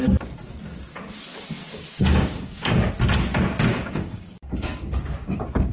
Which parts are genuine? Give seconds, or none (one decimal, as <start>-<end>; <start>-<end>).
0.0-1.6; 2.9-3.7

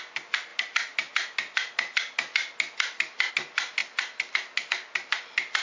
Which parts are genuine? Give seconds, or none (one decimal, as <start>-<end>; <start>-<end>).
0.0-5.6

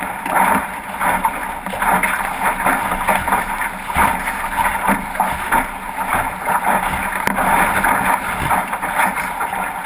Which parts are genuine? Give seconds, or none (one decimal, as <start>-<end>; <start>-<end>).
0.0-9.9

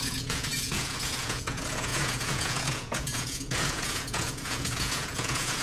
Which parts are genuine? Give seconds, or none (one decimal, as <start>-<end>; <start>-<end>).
none

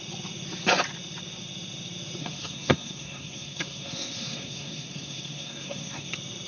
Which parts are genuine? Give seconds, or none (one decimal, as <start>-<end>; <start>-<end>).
0.0-2.2; 6.1-6.5

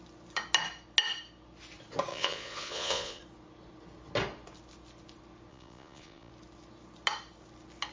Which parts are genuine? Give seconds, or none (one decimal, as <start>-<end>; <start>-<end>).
0.0-2.1; 3.2-5.5; 6.3-7.9